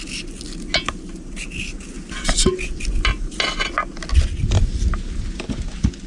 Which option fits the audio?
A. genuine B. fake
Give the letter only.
A